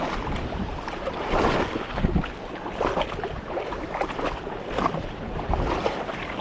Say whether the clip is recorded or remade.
recorded